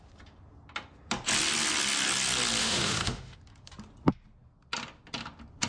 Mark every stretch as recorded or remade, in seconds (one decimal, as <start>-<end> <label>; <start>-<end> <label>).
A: 0.0-2.6 recorded; 2.6-3.4 remade; 3.4-5.7 recorded